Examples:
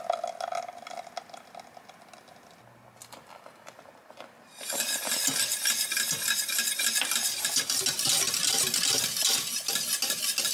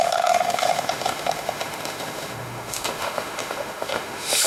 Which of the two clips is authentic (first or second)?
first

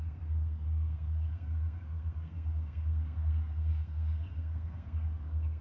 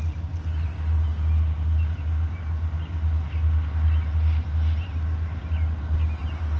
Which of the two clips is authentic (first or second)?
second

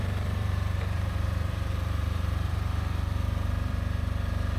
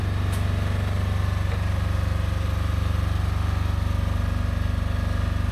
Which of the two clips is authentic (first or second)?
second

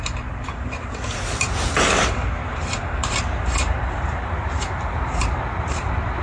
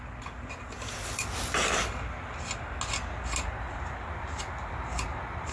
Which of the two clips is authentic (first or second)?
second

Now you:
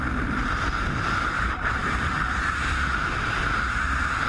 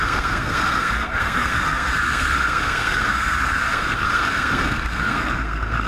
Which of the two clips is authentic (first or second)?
first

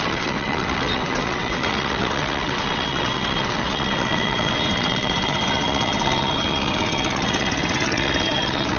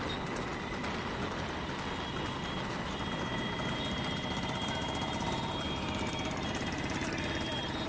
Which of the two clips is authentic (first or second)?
second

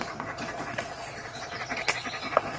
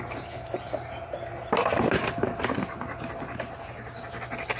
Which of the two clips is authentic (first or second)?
second